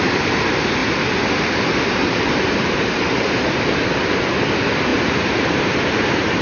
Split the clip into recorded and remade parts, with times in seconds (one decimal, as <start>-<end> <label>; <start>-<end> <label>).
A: 0.0-0.8 remade; 0.8-1.9 recorded; 1.9-6.4 remade